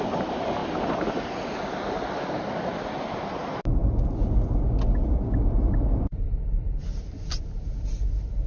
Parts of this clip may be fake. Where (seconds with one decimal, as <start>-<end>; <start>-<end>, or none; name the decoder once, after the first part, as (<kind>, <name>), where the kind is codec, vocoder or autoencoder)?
none